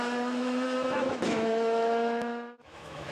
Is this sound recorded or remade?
remade